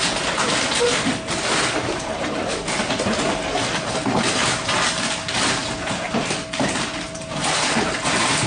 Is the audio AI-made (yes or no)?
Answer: no